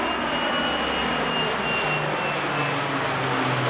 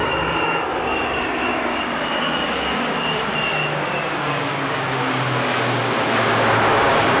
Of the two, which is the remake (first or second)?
second